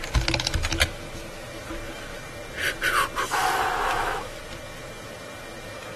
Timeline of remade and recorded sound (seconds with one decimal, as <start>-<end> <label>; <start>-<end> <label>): 0.0-3.4 recorded; 3.4-4.4 remade; 4.4-6.0 recorded